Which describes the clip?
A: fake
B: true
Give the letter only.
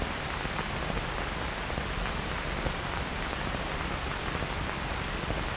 B